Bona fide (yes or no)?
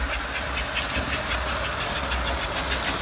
yes